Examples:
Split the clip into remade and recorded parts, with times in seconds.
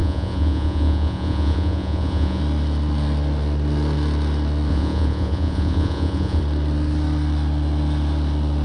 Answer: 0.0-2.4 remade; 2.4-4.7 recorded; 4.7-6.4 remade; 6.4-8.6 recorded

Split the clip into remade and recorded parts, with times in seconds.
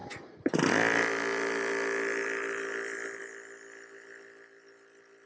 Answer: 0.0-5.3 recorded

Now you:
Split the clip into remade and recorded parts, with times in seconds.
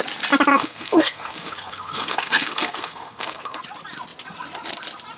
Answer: 0.0-0.5 recorded; 0.5-3.6 remade; 3.6-5.2 recorded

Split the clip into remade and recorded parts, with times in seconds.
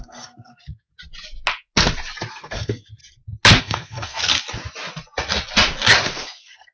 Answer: 0.0-0.9 remade; 0.9-2.3 recorded; 2.3-3.0 remade; 3.0-3.6 recorded; 3.6-4.2 remade; 4.2-6.1 recorded; 6.1-6.7 remade